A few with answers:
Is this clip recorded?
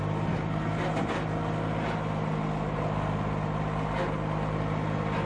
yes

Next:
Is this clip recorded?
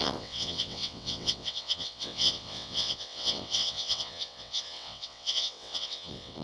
no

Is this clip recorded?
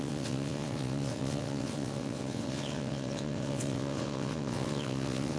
no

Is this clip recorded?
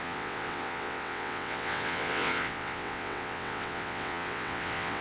no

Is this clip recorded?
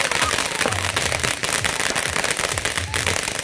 yes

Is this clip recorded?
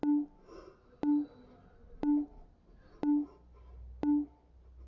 yes